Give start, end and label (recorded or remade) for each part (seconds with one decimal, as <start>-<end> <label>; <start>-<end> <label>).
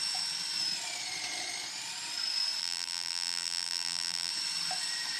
0.0-2.6 recorded; 2.6-4.3 remade; 4.3-5.2 recorded